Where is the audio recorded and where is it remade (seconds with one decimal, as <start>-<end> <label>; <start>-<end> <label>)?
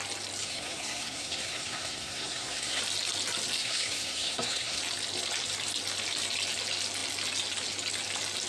0.0-0.4 recorded; 0.4-2.8 remade; 2.8-3.6 recorded; 3.6-4.8 remade; 4.8-8.5 recorded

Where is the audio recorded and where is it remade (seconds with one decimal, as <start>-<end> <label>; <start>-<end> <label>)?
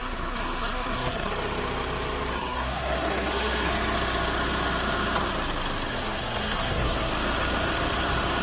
0.0-1.3 remade; 1.3-2.3 recorded; 2.3-3.7 remade; 3.7-5.9 recorded; 5.9-7.1 remade; 7.1-8.4 recorded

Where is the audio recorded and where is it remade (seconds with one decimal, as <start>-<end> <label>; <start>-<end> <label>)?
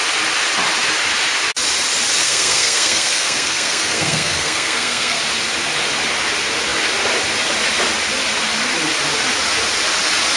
0.0-2.2 recorded; 2.2-5.2 remade; 5.2-10.4 recorded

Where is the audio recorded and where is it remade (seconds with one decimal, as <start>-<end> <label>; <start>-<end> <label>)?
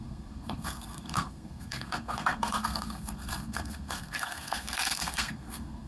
0.0-5.9 remade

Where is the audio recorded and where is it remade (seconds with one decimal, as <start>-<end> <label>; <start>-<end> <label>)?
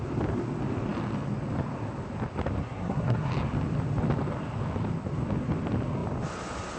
0.0-2.6 recorded; 2.6-3.3 remade; 3.3-6.8 recorded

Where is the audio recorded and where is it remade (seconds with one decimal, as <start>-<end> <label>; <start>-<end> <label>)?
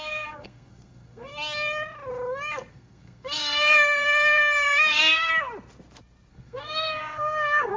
0.0-1.3 remade; 1.3-2.7 recorded; 2.7-5.3 remade; 5.3-6.3 recorded; 6.3-7.8 remade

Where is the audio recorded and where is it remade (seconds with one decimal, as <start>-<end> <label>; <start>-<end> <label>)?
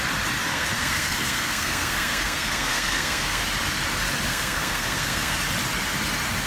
0.0-0.5 recorded; 0.5-3.4 remade; 3.4-4.3 recorded; 4.3-5.4 remade; 5.4-6.5 recorded